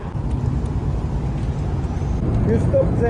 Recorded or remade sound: recorded